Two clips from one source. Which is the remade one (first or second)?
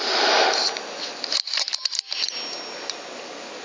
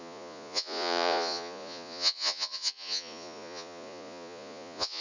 second